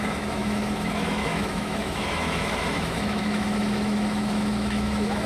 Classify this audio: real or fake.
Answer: fake